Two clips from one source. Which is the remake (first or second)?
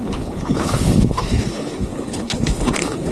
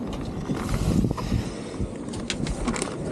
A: first